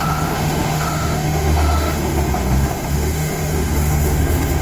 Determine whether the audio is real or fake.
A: fake